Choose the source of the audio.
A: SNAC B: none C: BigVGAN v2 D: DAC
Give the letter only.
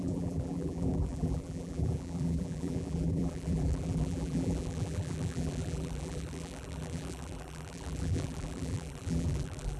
C